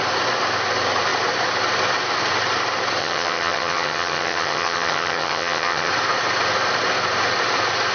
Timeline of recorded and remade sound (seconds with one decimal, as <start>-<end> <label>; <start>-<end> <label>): 0.0-3.0 recorded; 3.0-5.9 remade; 5.9-7.9 recorded